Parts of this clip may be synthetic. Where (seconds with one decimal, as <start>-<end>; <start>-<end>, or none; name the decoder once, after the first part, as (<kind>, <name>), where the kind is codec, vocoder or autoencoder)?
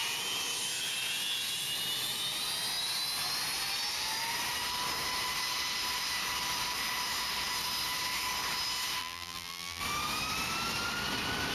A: 9.0-9.8 (vocoder, BigVGAN v2)